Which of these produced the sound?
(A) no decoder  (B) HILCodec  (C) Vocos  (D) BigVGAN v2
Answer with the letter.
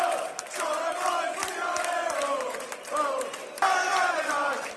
A